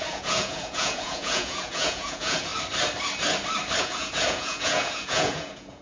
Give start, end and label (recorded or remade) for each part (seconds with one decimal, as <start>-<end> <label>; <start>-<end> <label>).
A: 0.0-2.5 remade; 2.5-3.8 recorded; 3.8-5.8 remade